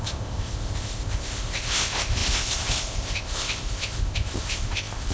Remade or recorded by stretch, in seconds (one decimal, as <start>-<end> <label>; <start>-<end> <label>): 0.0-5.1 remade